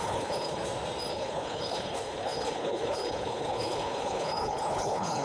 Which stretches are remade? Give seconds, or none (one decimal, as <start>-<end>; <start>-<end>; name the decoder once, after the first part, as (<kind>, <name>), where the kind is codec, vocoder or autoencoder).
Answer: 0.0-0.6 (codec, HILCodec); 1.1-5.2